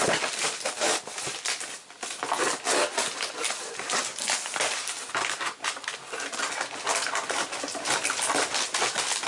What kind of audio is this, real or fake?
real